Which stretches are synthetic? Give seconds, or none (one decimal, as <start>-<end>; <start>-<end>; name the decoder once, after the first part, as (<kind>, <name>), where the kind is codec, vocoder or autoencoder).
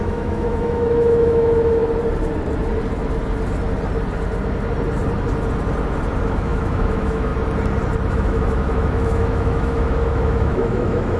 0.0-1.8 (autoencoder, DAC-VAE); 6.2-7.3; 8.1-11.2